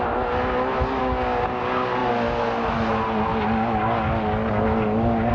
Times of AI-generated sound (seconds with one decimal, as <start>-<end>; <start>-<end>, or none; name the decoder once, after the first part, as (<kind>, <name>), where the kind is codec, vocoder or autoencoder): 1.0-1.6 (codec, DAC)